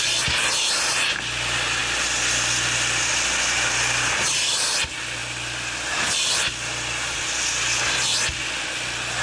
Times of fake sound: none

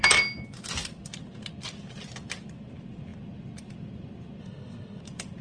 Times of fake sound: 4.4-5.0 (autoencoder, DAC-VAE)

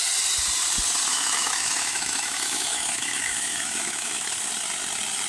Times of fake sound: 1.1-4.3 (autoencoder, DAC-VAE)